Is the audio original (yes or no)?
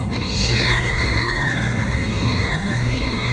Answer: no